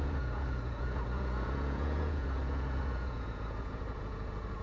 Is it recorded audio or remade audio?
remade